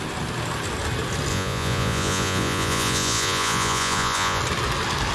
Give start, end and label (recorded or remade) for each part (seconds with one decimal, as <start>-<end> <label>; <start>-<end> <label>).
0.0-1.3 recorded; 1.3-4.4 remade; 4.4-5.1 recorded